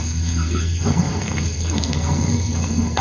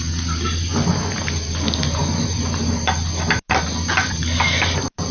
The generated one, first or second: first